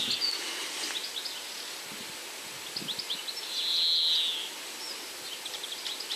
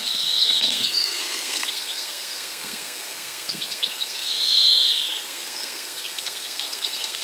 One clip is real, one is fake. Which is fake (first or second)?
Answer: second